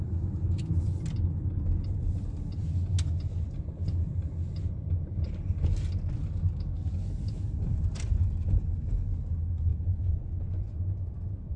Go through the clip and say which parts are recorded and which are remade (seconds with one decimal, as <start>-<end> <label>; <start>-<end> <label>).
0.0-9.7 recorded; 9.7-11.6 remade